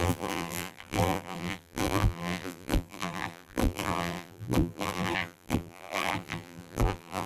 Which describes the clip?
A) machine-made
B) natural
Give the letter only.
A